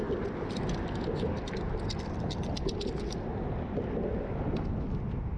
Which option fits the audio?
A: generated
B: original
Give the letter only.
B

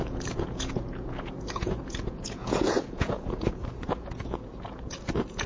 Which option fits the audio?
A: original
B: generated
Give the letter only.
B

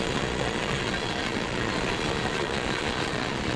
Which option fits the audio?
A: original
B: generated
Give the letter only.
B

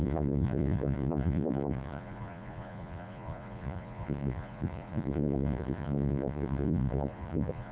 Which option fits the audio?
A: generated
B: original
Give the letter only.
A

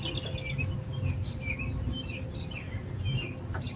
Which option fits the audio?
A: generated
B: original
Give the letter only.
B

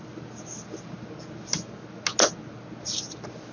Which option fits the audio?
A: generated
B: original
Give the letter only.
B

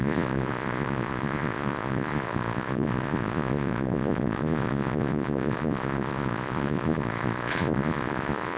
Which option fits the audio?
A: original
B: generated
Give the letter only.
B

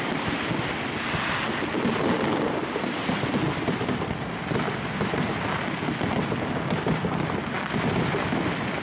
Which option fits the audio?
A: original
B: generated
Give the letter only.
A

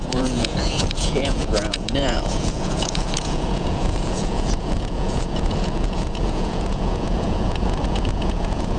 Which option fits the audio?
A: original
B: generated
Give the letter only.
B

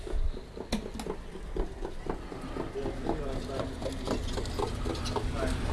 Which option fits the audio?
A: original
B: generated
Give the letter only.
A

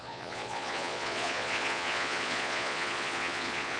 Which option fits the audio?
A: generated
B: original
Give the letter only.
A